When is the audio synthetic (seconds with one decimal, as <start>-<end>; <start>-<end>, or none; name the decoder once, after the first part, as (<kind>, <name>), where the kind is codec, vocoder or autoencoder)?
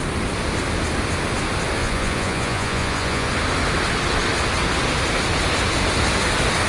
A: 1.8-3.3 (vocoder, Vocos)